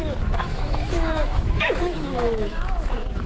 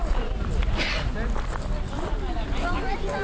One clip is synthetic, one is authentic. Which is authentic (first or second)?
second